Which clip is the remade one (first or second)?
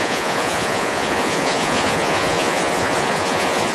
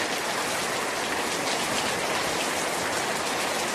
first